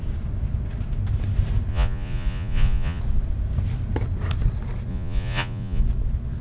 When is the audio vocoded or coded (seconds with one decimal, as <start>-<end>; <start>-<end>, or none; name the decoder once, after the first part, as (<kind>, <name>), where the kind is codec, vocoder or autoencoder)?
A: 1.7-3.0 (vocoder, Vocos); 4.9-5.8